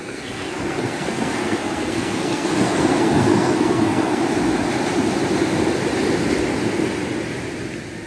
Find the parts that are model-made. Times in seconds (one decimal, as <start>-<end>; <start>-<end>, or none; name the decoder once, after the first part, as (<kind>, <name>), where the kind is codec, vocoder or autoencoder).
0.0-4.2 (codec, SNAC)